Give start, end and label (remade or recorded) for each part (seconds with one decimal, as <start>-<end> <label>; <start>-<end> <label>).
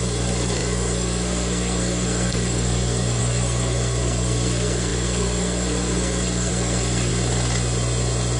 0.0-7.1 remade; 7.1-8.4 recorded